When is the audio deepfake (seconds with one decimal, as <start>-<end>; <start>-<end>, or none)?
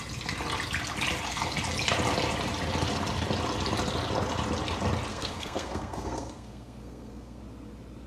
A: 5.1-7.4